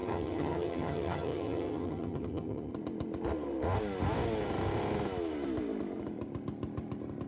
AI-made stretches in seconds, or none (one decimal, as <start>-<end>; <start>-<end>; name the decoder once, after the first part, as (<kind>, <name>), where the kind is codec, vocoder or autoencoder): 0.0-2.7 (vocoder, HiFi-GAN)